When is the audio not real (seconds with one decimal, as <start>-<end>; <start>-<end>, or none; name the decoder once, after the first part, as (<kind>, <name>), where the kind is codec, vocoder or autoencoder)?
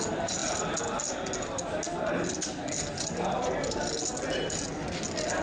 none